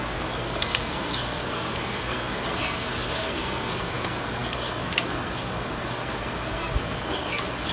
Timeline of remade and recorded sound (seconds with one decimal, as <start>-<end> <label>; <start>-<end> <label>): 0.0-7.7 remade